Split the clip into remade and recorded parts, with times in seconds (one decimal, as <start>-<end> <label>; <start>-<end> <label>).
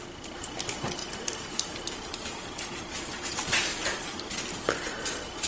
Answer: 0.0-1.0 recorded; 1.0-2.0 remade; 2.0-3.7 recorded; 3.7-4.5 remade; 4.5-5.5 recorded